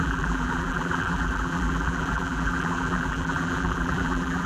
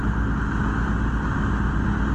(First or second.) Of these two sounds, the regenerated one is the first